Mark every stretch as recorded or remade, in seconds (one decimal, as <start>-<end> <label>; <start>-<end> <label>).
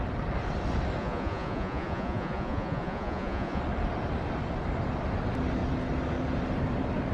0.0-1.0 recorded; 1.0-3.6 remade; 3.6-7.1 recorded